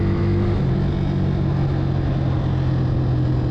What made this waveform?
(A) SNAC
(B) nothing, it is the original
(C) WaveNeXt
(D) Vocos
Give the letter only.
B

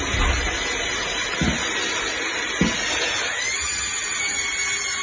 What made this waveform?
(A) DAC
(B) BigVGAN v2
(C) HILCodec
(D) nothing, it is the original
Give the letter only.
D